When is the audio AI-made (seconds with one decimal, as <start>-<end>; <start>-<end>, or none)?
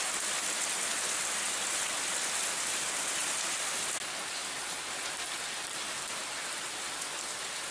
none